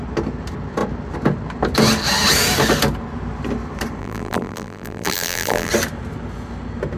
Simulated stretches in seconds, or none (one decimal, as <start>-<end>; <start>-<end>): 4.0-5.7